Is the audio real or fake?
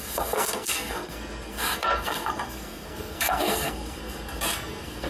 fake